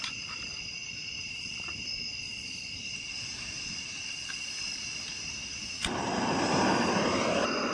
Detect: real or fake real